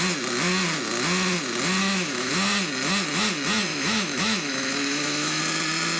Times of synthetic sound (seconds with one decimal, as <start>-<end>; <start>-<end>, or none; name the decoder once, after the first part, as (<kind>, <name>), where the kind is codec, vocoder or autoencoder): 1.8-2.3 (autoencoder, DAC-VAE); 3.7-5.4